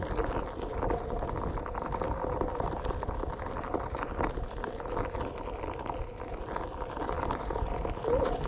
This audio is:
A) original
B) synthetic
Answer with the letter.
A